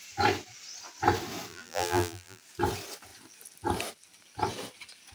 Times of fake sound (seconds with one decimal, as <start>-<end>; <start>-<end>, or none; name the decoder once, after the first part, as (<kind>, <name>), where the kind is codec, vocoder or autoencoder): 1.5-2.4 (vocoder, BigVGAN v2)